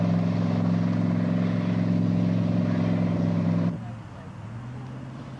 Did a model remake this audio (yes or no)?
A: no